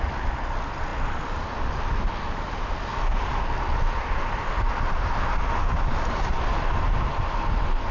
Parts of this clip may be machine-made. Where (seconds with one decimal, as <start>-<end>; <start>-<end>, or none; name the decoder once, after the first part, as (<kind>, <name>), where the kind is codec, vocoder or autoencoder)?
none